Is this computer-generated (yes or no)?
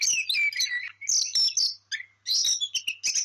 no